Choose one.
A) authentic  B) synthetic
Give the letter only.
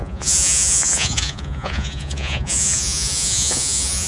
B